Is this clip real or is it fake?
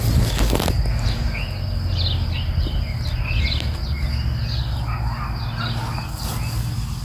real